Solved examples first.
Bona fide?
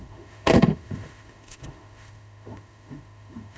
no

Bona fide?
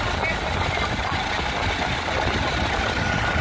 yes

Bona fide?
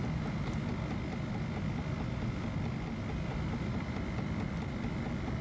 yes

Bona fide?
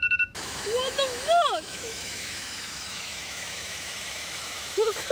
no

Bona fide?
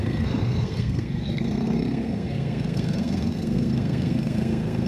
no